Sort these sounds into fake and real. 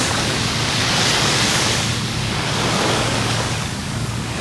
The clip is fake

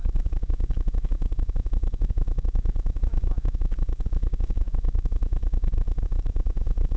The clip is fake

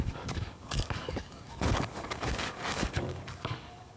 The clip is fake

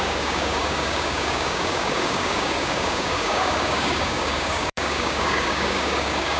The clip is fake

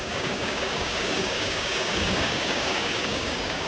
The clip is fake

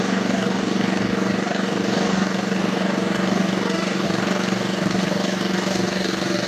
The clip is fake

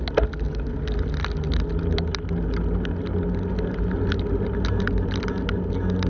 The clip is real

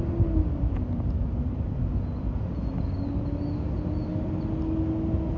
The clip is real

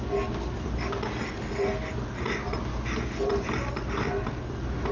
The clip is real